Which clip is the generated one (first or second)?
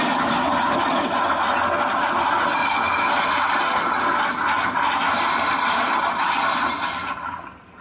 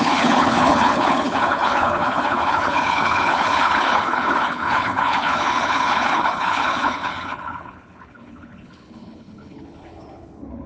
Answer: second